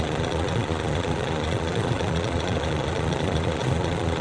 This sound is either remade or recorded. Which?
remade